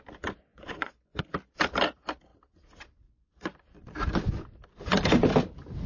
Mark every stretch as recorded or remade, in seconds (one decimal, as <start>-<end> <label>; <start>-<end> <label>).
0.0-0.5 recorded; 0.5-1.2 remade; 1.2-5.9 recorded